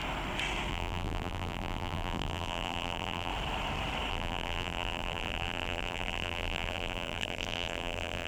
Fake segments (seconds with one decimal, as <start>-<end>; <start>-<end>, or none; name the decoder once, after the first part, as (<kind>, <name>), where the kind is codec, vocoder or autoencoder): 0.7-3.3 (vocoder, BigVGAN v2); 4.1-8.3